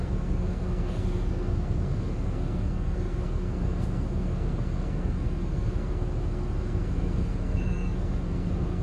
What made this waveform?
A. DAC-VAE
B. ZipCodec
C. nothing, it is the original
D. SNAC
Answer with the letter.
D